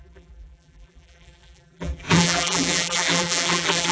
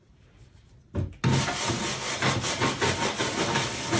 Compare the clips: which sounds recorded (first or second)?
second